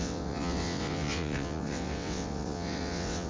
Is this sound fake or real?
fake